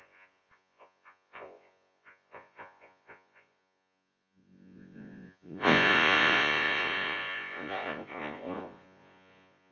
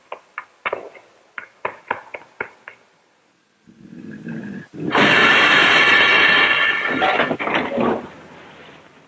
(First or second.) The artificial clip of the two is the first